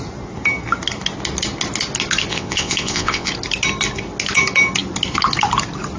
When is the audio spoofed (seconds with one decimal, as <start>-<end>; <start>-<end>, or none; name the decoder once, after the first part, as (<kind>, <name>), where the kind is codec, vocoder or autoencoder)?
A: 2.3-3.3 (vocoder, WaveNeXt)